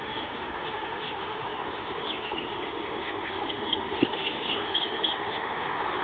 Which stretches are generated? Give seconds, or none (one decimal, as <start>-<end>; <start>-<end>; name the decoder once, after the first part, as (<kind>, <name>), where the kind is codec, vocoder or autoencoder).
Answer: 0.0-6.0 (autoencoder, DAC-VAE)